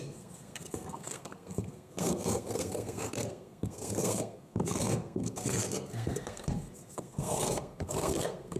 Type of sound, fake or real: fake